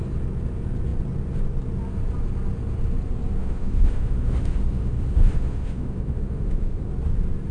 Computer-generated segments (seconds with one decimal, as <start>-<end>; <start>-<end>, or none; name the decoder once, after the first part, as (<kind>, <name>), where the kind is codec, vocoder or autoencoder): 3.4-6.9 (autoencoder, DAC-VAE)

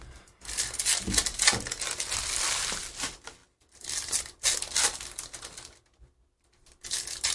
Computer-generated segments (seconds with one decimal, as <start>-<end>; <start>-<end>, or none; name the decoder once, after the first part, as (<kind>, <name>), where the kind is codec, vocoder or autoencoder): none

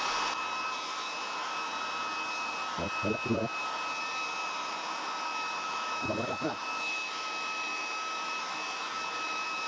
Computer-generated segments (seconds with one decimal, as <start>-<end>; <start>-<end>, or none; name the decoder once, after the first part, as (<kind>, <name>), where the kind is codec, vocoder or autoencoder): 0.9-1.7 (autoencoder, DAC-VAE); 4.4-9.7

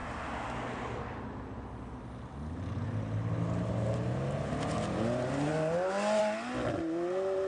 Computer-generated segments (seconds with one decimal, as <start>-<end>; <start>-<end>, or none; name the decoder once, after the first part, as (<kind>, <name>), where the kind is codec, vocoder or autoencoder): none

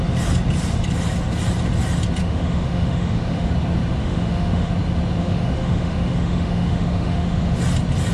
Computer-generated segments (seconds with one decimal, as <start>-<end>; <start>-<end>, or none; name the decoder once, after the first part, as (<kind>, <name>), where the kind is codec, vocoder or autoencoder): 2.2-3.5 (autoencoder, DAC-VAE); 4.0-4.7; 5.2-7.6

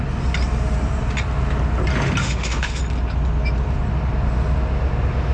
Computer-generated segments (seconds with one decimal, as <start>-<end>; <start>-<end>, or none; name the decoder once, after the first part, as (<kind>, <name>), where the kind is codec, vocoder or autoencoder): 2.2-2.8 (autoencoder, DAC-VAE)

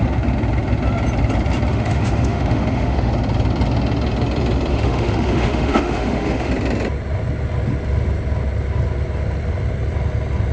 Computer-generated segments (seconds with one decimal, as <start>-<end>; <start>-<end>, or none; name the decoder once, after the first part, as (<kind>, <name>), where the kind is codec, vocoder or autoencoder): 1.7-3.1 (autoencoder, DAC-VAE); 4.7-6.5